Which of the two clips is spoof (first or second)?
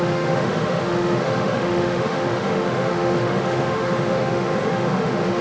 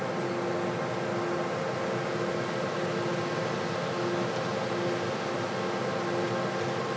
first